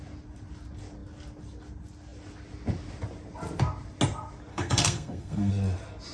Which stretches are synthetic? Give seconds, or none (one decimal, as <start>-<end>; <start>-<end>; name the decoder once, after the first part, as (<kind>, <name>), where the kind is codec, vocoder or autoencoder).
4.5-5.5 (codec, SNAC)